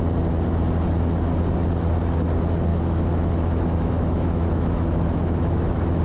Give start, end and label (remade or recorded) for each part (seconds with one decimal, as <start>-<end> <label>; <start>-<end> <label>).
0.0-2.7 recorded; 2.7-6.0 remade